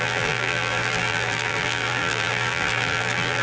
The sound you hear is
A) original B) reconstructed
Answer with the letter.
B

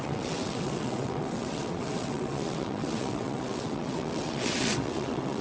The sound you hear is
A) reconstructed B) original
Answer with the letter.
A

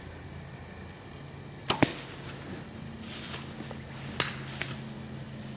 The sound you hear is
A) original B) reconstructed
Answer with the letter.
A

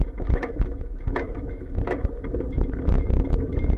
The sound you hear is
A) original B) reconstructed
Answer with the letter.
B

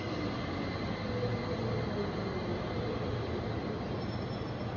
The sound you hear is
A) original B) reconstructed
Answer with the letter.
A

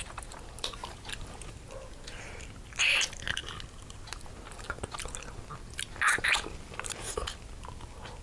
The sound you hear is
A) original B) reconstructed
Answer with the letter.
A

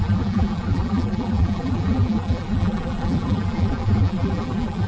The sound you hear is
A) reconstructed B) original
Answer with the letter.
A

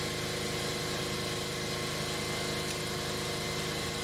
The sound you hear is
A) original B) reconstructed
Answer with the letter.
A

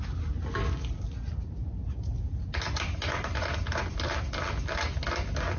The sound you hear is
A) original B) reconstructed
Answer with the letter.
A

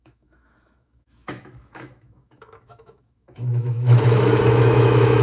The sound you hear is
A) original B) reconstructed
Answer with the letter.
B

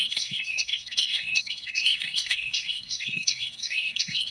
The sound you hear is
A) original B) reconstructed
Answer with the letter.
B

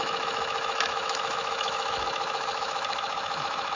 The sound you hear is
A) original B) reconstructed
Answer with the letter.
B